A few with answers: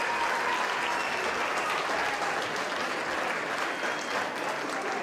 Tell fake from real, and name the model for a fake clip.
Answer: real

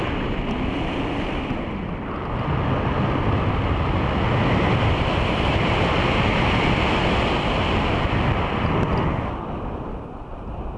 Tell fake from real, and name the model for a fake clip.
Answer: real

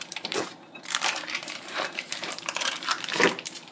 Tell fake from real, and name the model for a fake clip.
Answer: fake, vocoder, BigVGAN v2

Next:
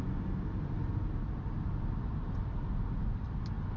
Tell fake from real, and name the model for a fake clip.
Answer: real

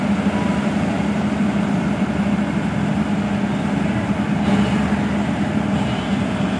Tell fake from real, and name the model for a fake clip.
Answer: real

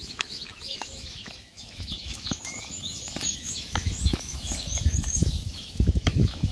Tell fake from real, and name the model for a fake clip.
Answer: fake, autoencoder, DAC-VAE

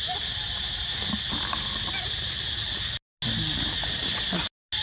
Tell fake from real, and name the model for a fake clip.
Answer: real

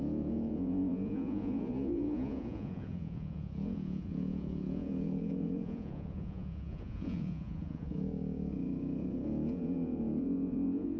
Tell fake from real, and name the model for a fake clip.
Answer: fake, vocoder, Vocos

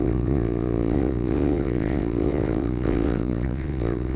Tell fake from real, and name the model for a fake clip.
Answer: fake, vocoder, WaveNeXt